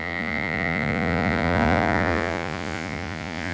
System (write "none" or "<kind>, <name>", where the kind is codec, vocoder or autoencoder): vocoder, Vocos